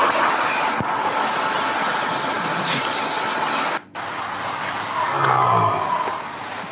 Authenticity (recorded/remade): recorded